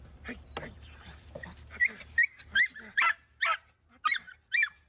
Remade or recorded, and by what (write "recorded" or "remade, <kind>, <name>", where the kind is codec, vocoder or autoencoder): recorded